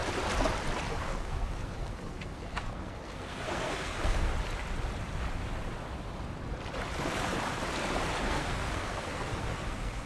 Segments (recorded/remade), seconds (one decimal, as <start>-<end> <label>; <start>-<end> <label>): 0.0-0.9 recorded; 0.9-4.3 remade; 4.3-8.2 recorded; 8.2-10.1 remade